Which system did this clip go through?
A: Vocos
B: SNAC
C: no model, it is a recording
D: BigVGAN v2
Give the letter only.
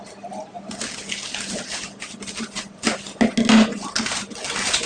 C